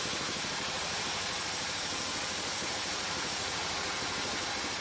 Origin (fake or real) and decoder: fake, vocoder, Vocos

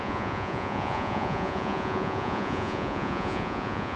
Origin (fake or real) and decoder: fake, vocoder, Vocos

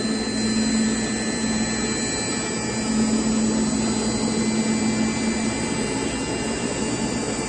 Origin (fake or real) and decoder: real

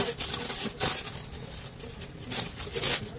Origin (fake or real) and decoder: real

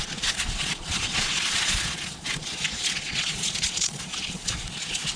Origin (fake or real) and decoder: fake, vocoder, Vocos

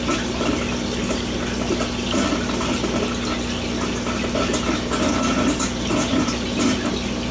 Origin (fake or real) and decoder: real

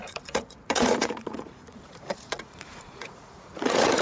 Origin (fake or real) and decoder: fake, vocoder, Vocos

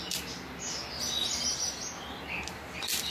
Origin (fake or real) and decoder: real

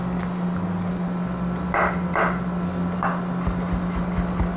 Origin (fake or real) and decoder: real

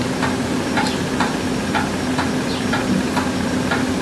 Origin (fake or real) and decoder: real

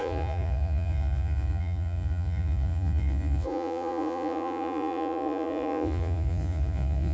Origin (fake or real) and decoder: fake, vocoder, Vocos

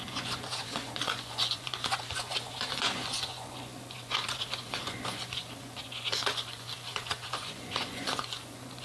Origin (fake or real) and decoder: fake, vocoder, Vocos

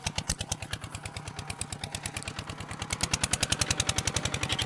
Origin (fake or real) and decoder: real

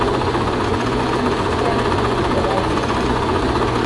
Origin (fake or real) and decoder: fake, vocoder, Vocos